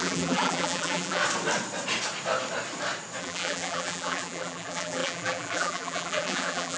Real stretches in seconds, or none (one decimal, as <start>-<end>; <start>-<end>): 1.2-3.2